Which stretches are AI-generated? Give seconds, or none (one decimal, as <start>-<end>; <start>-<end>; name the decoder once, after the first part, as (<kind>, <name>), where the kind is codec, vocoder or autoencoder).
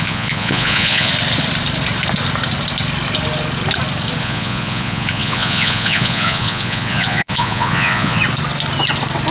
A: 0.0-1.1 (vocoder, Vocos); 4.2-8.2